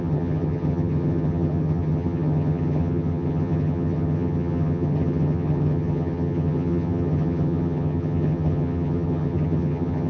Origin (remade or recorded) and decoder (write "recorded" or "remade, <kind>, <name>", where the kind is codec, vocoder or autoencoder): remade, vocoder, HiFi-GAN